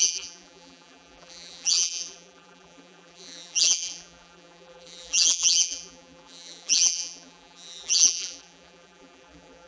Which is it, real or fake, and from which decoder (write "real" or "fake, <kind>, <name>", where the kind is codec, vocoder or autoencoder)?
fake, vocoder, BigVGAN v2